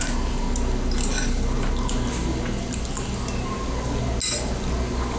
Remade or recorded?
recorded